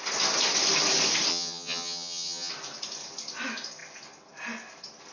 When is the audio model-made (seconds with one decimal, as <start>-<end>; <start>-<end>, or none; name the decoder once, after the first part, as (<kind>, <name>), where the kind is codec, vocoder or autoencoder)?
1.3-2.5 (vocoder, HiFi-GAN)